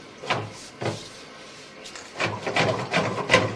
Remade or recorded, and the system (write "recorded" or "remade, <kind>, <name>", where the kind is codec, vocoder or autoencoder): recorded